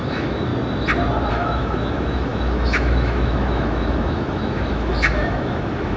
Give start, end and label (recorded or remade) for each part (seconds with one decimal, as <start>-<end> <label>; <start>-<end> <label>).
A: 0.0-0.5 remade; 0.5-1.3 recorded; 1.3-6.0 remade